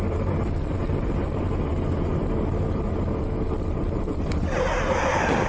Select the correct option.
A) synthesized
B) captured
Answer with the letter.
B